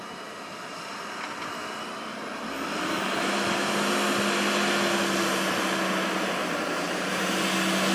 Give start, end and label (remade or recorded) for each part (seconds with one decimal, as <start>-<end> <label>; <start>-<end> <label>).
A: 0.0-2.1 recorded; 2.1-3.7 remade; 3.7-6.4 recorded; 6.4-7.1 remade; 7.1-7.9 recorded